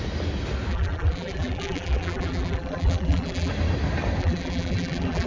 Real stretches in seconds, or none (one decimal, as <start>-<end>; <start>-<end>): 0.0-0.7; 3.5-4.2